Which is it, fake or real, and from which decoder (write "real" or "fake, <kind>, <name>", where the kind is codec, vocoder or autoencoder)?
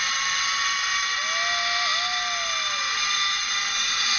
real